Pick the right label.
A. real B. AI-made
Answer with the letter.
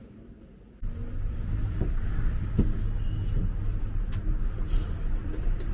A